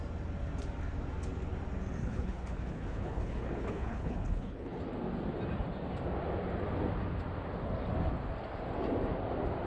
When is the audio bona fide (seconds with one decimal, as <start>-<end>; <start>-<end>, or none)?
0.0-2.0; 4.8-9.7